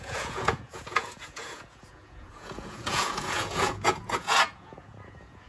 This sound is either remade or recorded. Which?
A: remade